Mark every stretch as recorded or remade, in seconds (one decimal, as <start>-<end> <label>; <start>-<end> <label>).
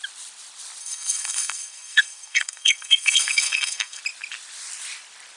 0.0-0.8 recorded; 0.8-4.0 remade; 4.0-5.4 recorded